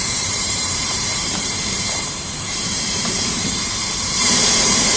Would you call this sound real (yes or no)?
no